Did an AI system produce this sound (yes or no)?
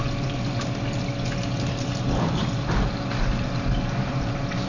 no